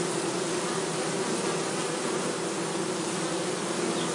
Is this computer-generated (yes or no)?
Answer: no